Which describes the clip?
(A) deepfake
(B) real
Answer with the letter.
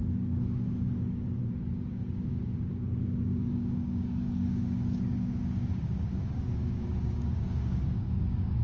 A